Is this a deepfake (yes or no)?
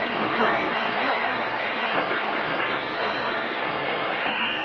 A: yes